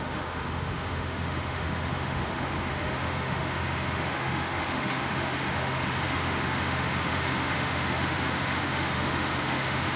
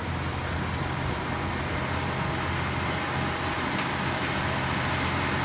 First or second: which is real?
second